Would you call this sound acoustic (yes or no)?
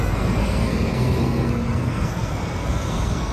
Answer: no